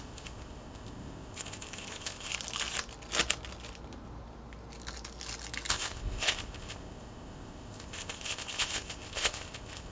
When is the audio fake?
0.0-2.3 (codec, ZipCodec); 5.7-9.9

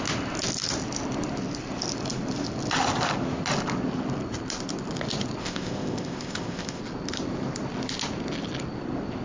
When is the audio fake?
5.4-6.8 (codec, ZipCodec)

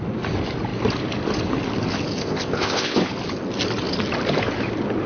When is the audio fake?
2.2-3.1 (codec, ZipCodec)

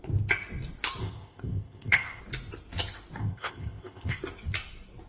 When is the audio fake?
1.0-2.2 (codec, ZipCodec); 3.2-4.2

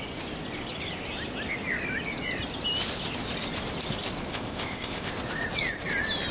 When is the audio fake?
4.3-5.1 (codec, ZipCodec)

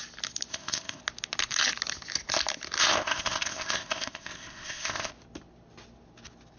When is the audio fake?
0.5-1.0 (codec, ZipCodec); 2.8-5.1